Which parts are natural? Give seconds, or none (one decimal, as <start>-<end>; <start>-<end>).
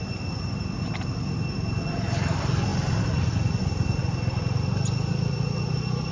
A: 0.0-6.1